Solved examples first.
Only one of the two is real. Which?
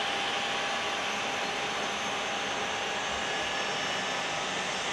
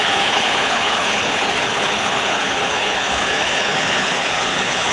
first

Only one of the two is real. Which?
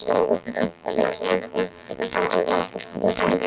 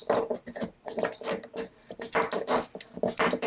second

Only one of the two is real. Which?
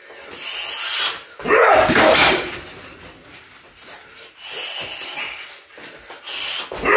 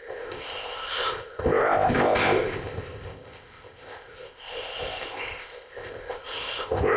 first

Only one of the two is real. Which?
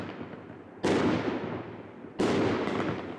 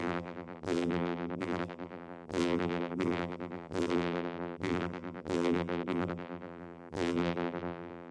first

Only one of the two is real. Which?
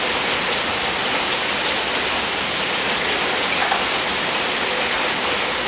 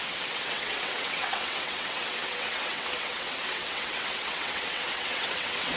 first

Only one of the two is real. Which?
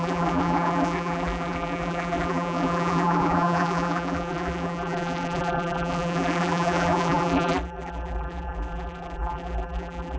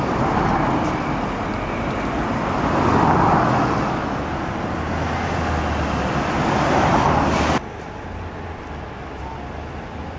second